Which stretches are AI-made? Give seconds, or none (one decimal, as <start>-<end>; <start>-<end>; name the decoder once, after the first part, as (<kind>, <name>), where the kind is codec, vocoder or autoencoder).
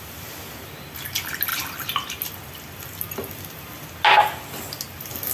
none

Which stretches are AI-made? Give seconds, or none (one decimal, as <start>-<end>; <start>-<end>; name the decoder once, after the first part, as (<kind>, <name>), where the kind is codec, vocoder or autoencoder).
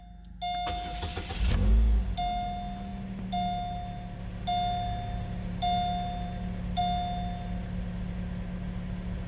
none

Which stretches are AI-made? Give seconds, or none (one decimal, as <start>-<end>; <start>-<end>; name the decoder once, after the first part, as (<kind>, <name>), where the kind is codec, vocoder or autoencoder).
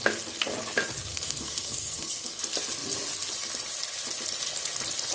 1.1-2.4 (codec, SNAC)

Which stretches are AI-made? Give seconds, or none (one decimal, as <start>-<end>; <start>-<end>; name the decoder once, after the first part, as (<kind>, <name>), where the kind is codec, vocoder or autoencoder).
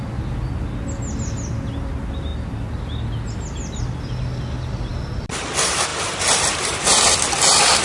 none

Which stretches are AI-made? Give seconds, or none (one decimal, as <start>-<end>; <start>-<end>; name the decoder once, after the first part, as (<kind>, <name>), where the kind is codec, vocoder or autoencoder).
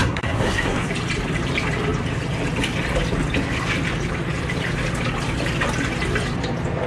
0.0-0.9 (codec, SNAC)